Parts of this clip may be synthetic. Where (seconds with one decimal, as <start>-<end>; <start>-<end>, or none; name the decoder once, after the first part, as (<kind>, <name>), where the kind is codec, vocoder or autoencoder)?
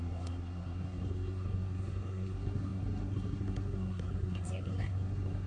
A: 0.0-5.5 (codec, SNAC)